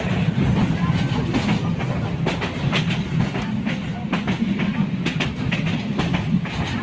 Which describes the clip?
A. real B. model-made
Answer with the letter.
A